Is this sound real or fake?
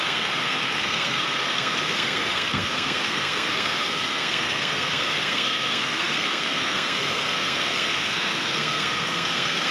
fake